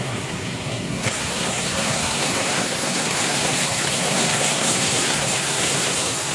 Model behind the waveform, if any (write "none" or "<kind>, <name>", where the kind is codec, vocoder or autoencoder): codec, SNAC